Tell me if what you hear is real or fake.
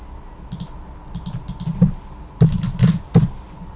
real